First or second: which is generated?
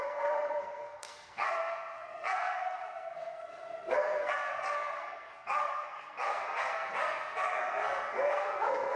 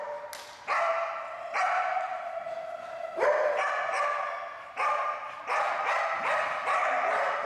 first